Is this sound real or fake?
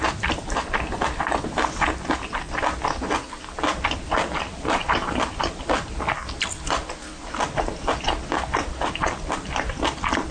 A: real